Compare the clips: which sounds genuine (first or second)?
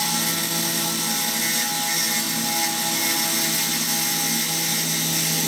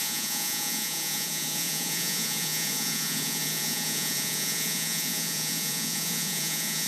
first